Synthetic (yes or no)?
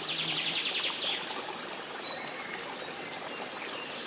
no